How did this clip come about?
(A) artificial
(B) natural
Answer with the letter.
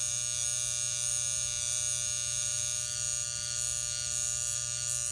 B